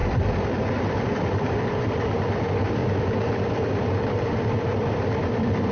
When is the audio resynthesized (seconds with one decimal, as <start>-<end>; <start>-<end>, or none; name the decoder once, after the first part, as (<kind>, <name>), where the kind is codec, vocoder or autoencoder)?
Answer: 0.0-2.8 (vocoder, BigVGAN v2); 4.2-5.7